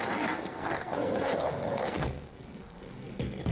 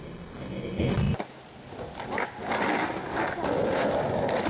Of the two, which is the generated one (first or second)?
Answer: first